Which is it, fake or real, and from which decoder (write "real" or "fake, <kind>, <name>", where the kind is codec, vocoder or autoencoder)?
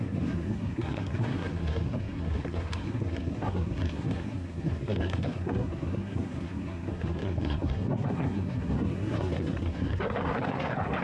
fake, codec, SNAC